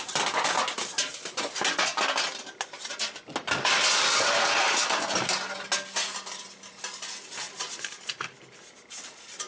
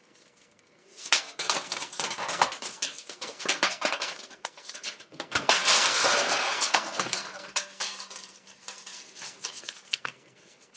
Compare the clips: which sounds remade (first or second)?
second